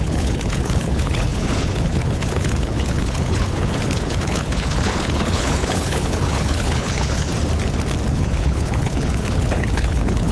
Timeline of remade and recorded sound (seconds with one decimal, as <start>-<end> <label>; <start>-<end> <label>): 0.0-7.3 remade; 7.3-8.1 recorded; 8.1-10.3 remade